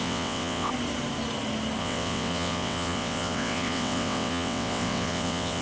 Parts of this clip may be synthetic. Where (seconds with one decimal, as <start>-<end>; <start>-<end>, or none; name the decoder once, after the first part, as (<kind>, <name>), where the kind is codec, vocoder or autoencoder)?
0.0-0.7 (vocoder, WaveNeXt); 1.8-5.6